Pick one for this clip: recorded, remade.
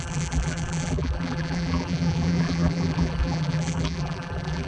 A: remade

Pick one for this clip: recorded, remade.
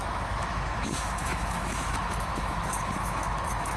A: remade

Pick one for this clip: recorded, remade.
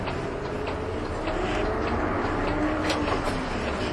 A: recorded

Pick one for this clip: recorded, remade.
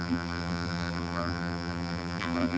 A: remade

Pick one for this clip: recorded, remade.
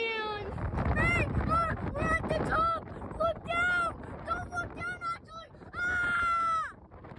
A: recorded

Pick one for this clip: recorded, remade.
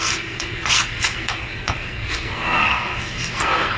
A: remade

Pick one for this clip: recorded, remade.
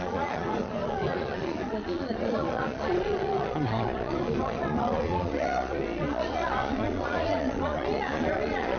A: remade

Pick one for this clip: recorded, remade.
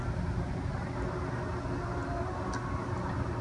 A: recorded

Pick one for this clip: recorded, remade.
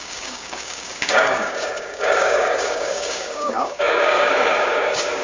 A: remade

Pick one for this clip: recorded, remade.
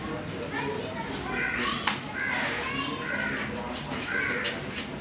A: recorded